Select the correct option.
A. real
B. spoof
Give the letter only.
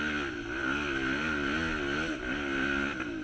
A